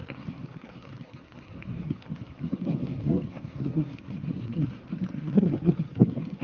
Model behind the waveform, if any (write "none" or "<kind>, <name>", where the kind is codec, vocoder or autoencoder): codec, SNAC